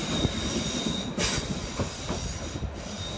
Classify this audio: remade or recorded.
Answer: recorded